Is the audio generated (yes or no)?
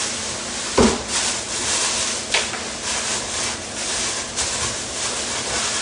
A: no